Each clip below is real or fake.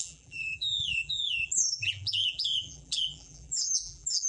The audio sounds fake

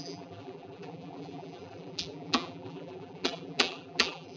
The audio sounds fake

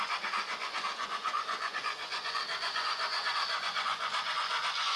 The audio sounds fake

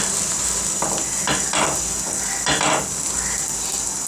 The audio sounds real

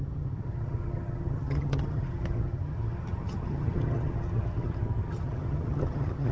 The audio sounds fake